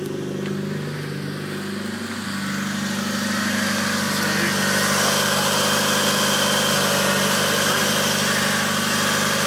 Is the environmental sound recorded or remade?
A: recorded